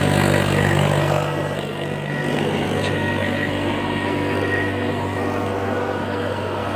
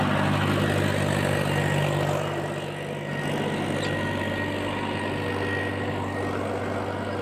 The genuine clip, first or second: second